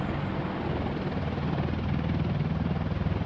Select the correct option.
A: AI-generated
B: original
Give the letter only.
B